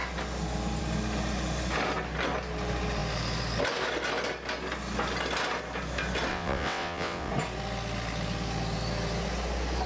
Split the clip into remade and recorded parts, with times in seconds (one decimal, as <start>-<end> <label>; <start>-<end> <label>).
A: 0.0-6.3 recorded; 6.3-7.3 remade; 7.3-9.9 recorded